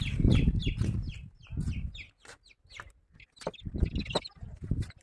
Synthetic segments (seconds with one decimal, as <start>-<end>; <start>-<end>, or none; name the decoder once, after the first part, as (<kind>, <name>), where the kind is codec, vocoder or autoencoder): none